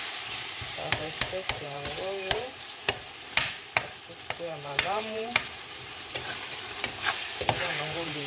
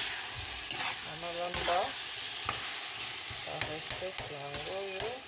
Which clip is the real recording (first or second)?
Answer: second